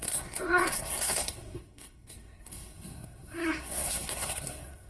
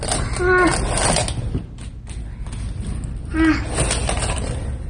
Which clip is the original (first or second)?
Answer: second